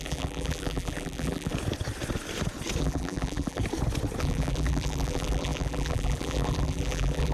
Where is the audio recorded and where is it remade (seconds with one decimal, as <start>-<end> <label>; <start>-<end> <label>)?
0.0-1.5 remade; 1.5-2.8 recorded; 2.8-3.6 remade; 3.6-4.2 recorded; 4.2-7.3 remade